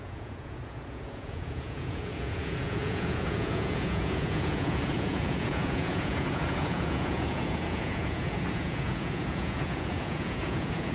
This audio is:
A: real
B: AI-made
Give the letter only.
B